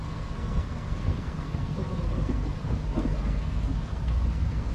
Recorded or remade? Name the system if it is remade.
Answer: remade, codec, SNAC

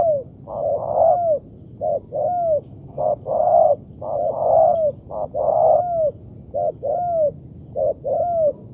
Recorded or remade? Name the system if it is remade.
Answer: recorded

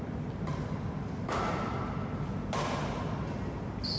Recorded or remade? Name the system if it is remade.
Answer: recorded